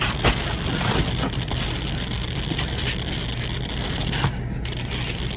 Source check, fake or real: real